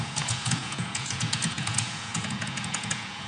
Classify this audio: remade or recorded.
remade